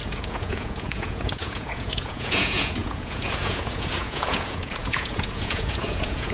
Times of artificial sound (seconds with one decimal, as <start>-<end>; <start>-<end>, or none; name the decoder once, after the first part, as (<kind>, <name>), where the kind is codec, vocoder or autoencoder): 0.0-6.3 (vocoder, Vocos)